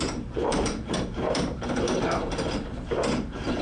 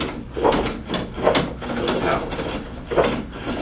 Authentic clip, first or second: second